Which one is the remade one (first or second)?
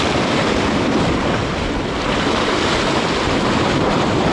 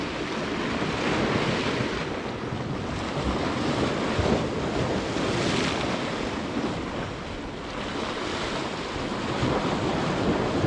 first